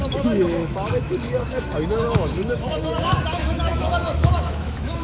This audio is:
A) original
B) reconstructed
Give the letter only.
B